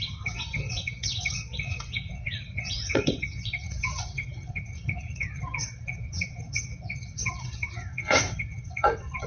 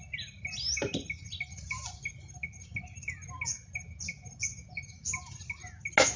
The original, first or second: second